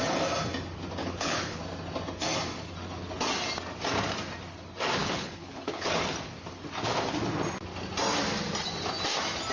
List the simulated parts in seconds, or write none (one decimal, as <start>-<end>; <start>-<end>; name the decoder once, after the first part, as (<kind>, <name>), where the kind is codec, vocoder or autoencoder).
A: 1.0-1.6 (codec, HILCodec); 5.0-5.9